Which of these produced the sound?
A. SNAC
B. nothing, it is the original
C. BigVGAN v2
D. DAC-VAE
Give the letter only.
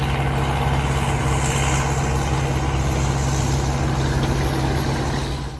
B